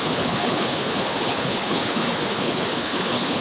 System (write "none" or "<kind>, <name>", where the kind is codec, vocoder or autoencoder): codec, HILCodec